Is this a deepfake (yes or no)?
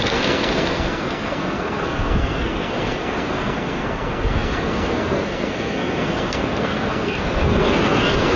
yes